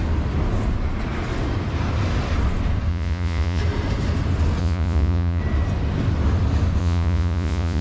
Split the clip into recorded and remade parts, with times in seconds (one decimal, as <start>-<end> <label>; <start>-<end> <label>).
0.0-2.9 recorded; 2.9-3.6 remade; 3.6-4.6 recorded; 4.6-5.4 remade; 5.4-6.8 recorded; 6.8-7.8 remade